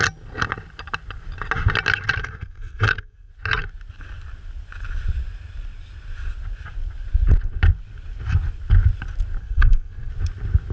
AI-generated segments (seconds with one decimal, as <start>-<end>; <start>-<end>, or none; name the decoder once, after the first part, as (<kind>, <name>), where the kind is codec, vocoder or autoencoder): 2.2-3.3 (codec, SNAC); 9.4-10.1

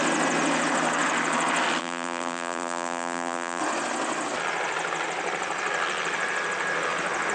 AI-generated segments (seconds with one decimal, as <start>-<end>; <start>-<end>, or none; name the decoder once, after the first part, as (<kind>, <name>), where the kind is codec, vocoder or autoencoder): 1.8-3.6 (vocoder, BigVGAN v2)

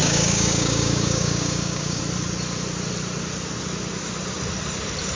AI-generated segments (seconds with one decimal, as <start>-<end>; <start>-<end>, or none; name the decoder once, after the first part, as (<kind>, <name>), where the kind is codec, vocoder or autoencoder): 0.0-2.0 (codec, DAC)

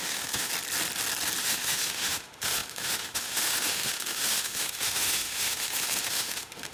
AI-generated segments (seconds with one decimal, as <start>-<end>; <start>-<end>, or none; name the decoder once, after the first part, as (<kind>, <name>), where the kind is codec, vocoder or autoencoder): 0.0-0.5 (autoencoder, DAC-VAE); 1.4-6.7

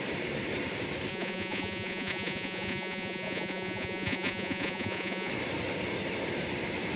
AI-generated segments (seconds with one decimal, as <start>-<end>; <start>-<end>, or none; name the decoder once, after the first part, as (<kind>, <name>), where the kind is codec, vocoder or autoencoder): 1.1-5.3 (vocoder, Vocos)